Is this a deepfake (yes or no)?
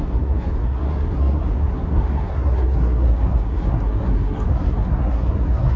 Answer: yes